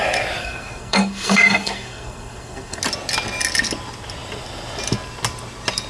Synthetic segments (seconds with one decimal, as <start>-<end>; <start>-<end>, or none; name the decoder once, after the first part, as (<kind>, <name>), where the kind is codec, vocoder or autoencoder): 0.4-2.8 (codec, SNAC)